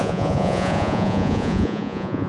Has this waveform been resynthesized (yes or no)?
yes